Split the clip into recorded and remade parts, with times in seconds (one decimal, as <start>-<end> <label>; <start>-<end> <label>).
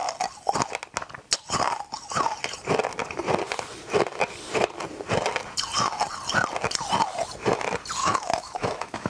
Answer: 0.0-8.0 recorded; 8.0-9.1 remade